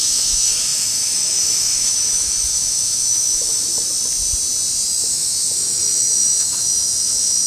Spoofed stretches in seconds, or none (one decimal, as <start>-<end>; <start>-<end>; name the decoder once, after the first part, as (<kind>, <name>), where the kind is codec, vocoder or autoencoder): 0.0-3.7 (autoencoder, DAC-VAE); 5.1-7.5